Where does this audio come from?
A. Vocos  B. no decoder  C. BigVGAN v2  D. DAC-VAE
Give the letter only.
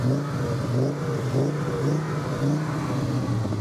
B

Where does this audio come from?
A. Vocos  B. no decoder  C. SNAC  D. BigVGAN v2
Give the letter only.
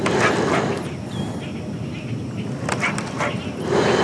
B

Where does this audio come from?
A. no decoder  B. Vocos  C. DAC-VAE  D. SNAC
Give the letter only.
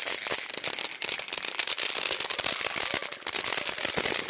A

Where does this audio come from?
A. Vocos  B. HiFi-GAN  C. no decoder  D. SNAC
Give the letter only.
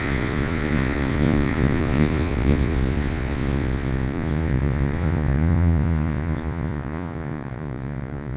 A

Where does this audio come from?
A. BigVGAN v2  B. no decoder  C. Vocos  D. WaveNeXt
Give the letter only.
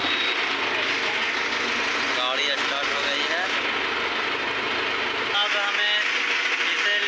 B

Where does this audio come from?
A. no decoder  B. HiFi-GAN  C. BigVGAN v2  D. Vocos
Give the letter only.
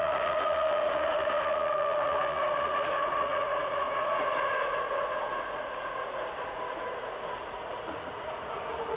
D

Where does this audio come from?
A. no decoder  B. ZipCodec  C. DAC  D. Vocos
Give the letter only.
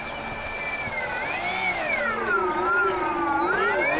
A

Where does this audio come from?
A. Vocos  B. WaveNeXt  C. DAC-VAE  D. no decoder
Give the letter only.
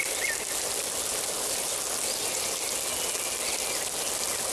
D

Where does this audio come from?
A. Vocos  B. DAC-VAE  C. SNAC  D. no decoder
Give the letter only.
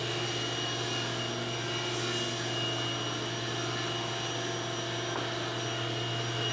D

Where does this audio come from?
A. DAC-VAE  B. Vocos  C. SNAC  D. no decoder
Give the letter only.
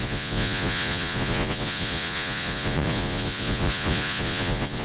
B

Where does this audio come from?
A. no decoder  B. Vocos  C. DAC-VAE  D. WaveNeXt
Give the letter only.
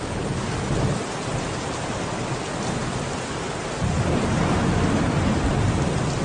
A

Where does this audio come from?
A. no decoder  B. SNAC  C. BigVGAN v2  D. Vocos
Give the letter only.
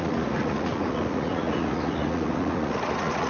D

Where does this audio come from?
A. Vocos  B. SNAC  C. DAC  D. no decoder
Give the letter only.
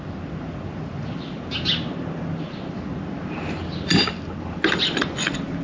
D